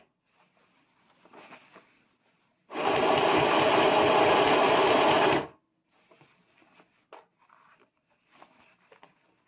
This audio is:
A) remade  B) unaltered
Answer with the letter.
B